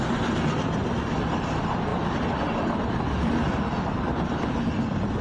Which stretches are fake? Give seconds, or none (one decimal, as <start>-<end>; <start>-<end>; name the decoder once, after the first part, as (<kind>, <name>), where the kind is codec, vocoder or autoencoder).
none